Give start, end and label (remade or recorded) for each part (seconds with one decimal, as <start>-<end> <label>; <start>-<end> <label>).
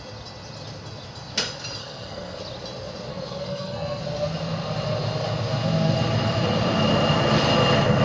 0.0-1.8 recorded; 1.8-2.4 remade; 2.4-3.1 recorded; 3.1-4.0 remade; 4.0-8.0 recorded